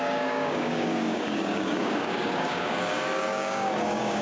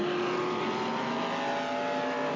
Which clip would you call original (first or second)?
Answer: second